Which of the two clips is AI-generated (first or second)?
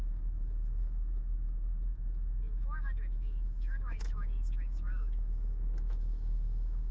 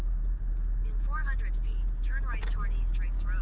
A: first